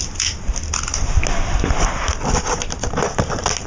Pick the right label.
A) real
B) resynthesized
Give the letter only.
A